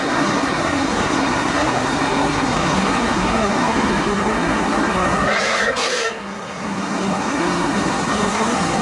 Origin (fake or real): fake